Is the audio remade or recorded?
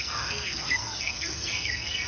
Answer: remade